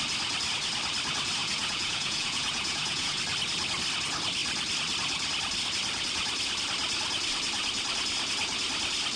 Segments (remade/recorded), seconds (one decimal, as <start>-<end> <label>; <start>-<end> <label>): 0.0-1.4 recorded; 1.4-3.2 remade; 3.2-9.2 recorded